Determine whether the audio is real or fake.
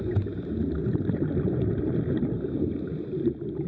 real